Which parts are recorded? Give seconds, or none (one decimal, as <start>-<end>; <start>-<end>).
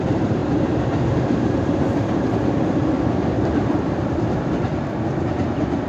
0.4-3.5; 4.7-5.9